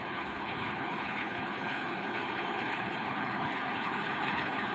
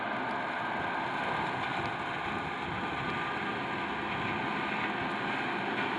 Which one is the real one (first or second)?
second